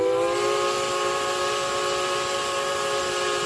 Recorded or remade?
recorded